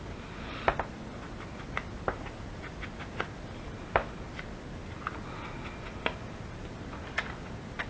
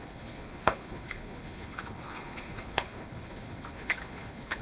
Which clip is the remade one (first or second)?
second